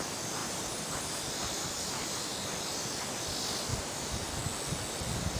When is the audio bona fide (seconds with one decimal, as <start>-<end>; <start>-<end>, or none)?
0.0-0.4; 1.2-3.7; 4.4-5.4